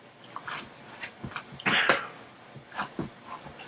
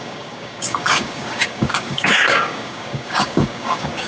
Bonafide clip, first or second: first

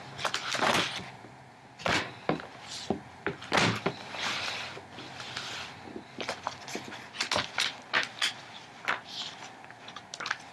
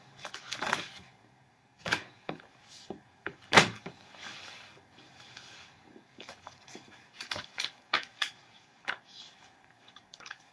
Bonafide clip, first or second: first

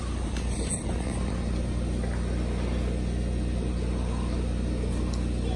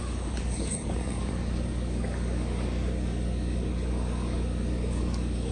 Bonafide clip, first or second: first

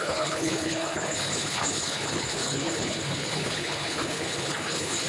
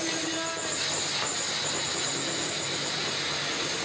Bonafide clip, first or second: second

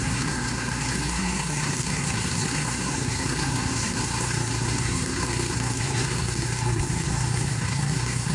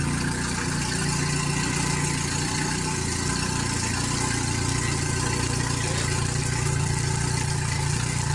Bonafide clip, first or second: second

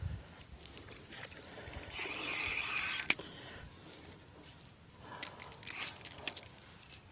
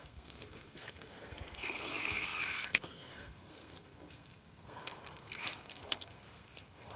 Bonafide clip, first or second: first